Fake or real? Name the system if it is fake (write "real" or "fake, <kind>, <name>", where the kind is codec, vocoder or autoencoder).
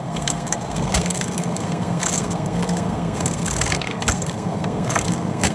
fake, codec, SNAC